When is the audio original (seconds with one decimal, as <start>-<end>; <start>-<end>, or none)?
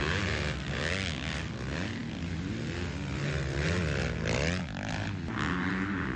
0.0-6.2